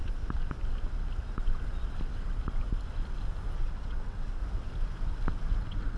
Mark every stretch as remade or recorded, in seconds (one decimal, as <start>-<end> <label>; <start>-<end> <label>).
0.0-3.6 recorded; 3.6-4.4 remade; 4.4-5.6 recorded; 5.6-6.0 remade